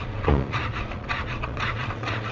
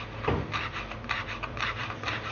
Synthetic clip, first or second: first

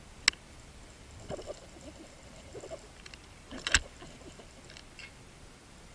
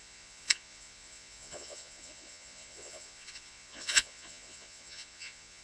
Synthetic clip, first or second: second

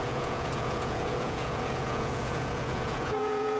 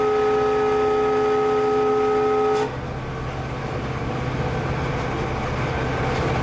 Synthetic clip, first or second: first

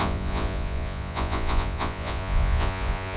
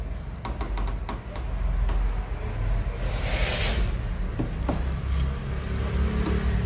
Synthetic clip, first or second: first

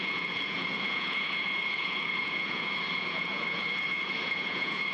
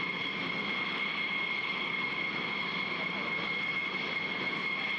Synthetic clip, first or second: first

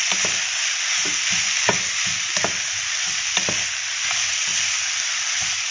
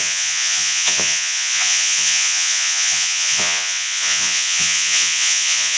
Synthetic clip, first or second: second